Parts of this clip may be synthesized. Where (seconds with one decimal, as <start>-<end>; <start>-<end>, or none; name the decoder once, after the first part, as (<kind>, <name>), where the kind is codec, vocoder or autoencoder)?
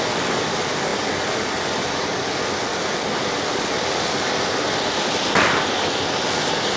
none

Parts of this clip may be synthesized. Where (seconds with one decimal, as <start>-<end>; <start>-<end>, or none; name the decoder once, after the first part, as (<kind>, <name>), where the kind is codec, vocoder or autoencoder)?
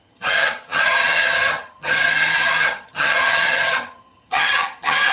0.0-5.1 (vocoder, HiFi-GAN)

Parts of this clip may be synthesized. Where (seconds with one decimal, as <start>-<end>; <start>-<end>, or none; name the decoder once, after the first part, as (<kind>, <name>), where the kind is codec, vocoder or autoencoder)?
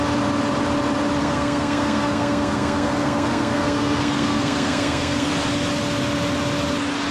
1.2-5.3 (codec, SNAC)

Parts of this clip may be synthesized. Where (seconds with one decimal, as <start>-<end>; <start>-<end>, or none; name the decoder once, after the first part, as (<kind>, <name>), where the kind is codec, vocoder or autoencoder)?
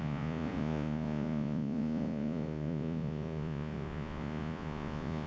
0.0-5.3 (vocoder, Vocos)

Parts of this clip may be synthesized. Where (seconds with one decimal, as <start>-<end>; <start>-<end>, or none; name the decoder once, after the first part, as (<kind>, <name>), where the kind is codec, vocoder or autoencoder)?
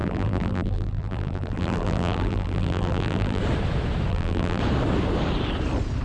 0.0-3.4 (vocoder, BigVGAN v2); 4.1-4.6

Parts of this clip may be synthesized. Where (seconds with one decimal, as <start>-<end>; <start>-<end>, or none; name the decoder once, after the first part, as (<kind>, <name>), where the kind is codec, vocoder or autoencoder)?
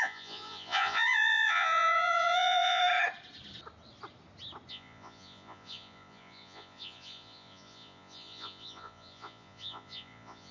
0.0-2.8 (vocoder, Vocos); 4.7-10.5